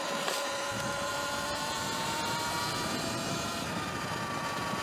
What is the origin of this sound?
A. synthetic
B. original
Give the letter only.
B